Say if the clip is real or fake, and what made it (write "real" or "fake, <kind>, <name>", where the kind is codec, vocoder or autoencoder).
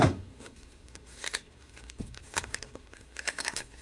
fake, codec, SNAC